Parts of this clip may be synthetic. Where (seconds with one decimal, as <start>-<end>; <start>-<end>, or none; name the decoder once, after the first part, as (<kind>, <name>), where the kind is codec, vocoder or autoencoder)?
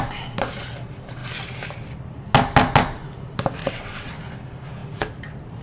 3.6-4.1 (vocoder, WaveNeXt)